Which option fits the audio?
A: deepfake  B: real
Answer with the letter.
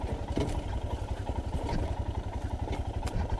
B